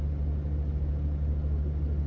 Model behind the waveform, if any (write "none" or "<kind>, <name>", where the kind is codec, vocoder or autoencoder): none